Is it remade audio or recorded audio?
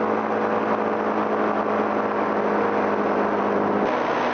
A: recorded